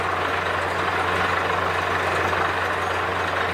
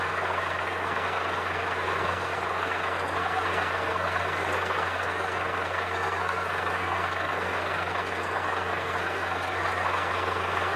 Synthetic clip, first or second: second